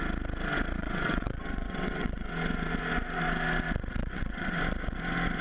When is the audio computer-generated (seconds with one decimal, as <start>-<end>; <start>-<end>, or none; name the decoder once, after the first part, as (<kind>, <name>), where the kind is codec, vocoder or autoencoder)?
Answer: 0.8-2.3 (vocoder, WaveNeXt); 4.0-4.6